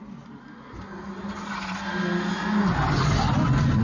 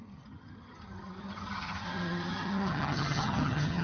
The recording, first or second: first